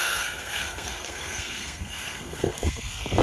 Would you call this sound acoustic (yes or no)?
no